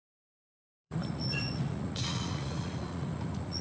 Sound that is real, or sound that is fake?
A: fake